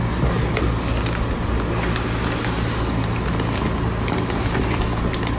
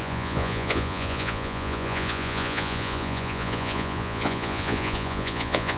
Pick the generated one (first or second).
second